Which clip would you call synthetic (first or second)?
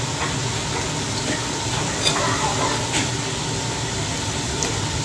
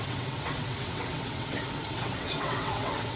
second